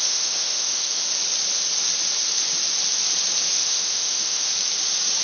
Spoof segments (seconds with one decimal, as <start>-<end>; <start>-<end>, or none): 0.0-1.0; 3.5-4.5